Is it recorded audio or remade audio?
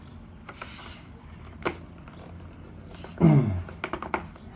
recorded